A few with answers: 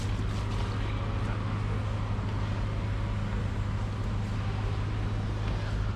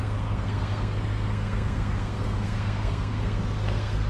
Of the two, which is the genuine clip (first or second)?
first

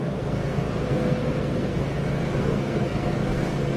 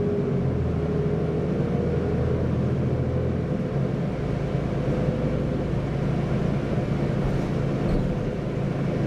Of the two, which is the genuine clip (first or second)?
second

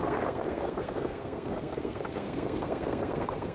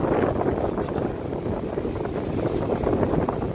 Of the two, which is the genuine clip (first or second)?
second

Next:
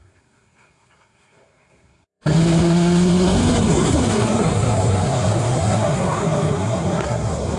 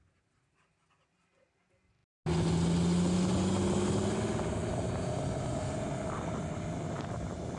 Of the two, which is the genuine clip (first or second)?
second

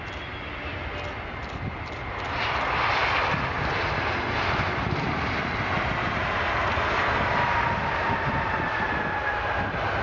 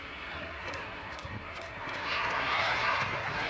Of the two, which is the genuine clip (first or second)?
first